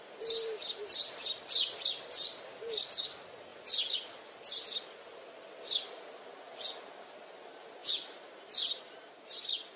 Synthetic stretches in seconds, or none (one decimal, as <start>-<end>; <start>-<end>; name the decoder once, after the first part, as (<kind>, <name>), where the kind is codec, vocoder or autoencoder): 7.8-8.8 (vocoder, BigVGAN v2)

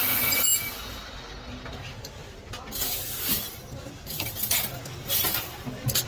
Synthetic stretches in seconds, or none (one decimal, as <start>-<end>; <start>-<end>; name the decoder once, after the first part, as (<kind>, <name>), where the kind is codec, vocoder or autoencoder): 2.2-6.1 (vocoder, BigVGAN v2)

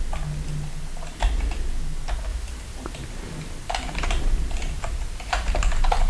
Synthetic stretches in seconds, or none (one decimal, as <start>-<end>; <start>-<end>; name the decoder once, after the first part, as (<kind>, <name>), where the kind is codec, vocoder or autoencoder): 2.3-6.1 (vocoder, BigVGAN v2)

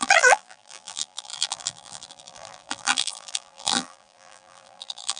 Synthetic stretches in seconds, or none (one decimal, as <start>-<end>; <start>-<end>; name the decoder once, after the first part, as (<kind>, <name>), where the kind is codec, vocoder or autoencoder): 0.0-5.2 (vocoder, BigVGAN v2)

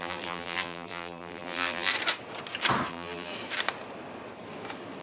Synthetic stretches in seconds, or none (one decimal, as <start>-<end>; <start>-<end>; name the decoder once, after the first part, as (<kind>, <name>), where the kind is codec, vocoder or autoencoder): 0.0-1.9 (vocoder, BigVGAN v2); 2.9-3.3

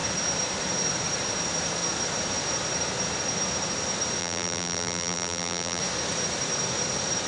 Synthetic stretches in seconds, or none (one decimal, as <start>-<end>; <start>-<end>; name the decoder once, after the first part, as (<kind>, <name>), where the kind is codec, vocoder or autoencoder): 4.2-5.8 (vocoder, BigVGAN v2)